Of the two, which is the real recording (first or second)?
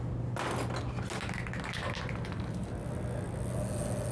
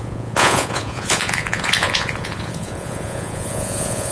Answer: first